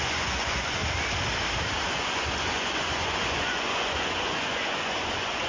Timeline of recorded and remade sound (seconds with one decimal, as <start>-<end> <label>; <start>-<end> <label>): 0.0-0.8 remade; 0.8-1.9 recorded; 1.9-5.5 remade